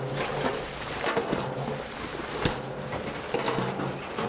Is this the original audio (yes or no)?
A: yes